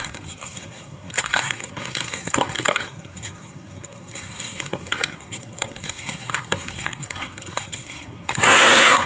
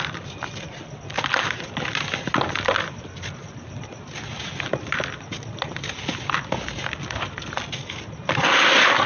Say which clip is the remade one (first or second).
first